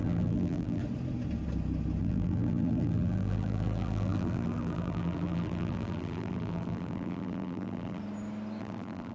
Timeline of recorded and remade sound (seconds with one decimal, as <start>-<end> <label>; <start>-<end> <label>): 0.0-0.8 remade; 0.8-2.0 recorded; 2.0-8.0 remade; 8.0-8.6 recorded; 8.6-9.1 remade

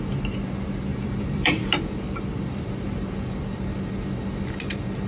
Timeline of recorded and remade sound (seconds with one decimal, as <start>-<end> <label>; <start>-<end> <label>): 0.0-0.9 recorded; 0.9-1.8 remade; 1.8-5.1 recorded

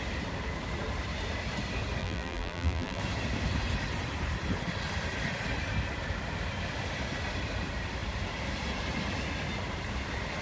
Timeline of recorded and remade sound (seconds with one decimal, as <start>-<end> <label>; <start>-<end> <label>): 0.0-2.0 recorded; 2.0-3.0 remade; 3.0-10.4 recorded

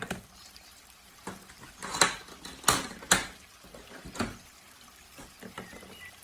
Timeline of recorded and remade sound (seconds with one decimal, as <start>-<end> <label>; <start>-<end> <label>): 0.0-1.8 remade; 1.8-4.4 recorded; 4.4-6.2 remade